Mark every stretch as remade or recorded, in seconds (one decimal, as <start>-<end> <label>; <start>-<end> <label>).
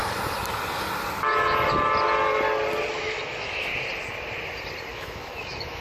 0.0-2.9 recorded; 2.9-3.7 remade; 3.7-4.9 recorded; 4.9-5.8 remade